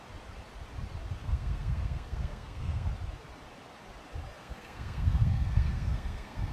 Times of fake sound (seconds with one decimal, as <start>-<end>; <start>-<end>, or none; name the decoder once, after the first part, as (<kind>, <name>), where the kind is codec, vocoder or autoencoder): 1.2-2.9 (codec, SNAC); 4.4-6.5